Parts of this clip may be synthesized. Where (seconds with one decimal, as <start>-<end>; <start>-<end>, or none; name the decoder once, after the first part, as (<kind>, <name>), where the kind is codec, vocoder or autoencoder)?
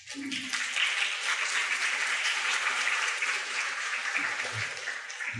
1.6-4.8 (vocoder, BigVGAN v2)